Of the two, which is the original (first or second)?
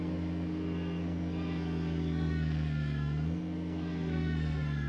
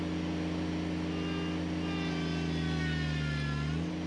second